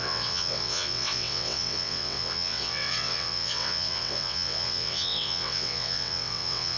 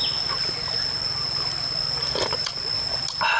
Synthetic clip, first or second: first